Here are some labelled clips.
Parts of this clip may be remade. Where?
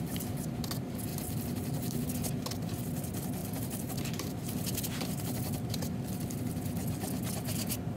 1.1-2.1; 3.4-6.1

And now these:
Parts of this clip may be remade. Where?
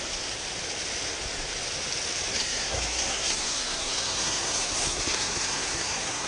2.3-6.3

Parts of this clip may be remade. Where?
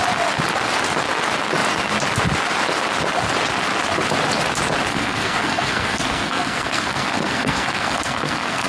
4.9-8.7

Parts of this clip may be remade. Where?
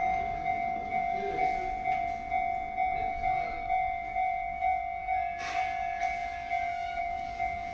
0.0-1.4; 3.1-7.7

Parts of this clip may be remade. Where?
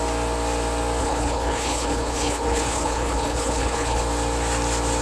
1.0-4.0